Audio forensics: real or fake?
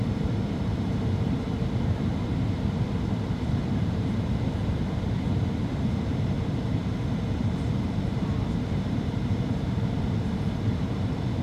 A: fake